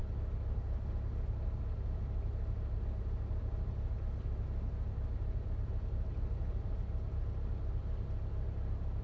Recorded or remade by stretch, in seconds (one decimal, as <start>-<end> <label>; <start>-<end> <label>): 0.0-9.0 recorded